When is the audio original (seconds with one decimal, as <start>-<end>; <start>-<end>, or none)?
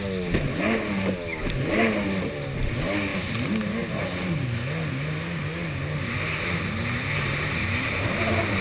0.0-8.6